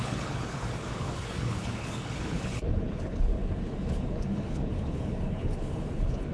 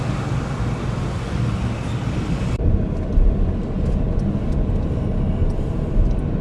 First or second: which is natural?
second